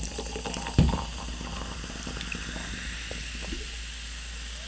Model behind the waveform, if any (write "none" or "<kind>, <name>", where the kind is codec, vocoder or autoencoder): none